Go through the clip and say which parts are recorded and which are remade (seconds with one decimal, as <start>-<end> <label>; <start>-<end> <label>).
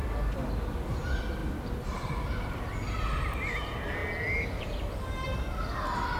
0.0-6.2 recorded